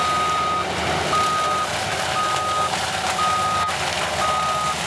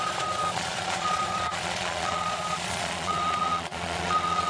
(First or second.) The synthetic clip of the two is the second